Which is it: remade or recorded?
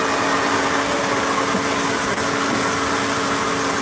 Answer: recorded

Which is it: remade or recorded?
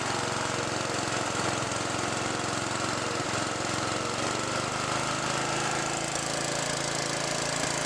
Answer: recorded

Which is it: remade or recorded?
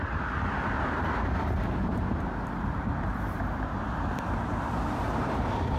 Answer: remade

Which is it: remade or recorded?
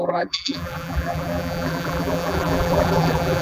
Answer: remade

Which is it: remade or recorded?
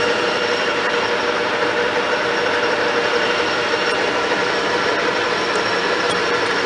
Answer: remade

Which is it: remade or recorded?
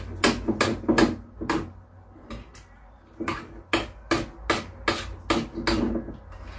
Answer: recorded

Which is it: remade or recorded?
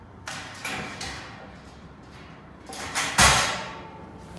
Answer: remade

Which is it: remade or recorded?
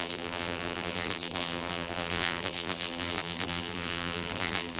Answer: remade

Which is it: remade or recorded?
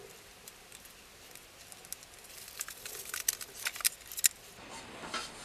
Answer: recorded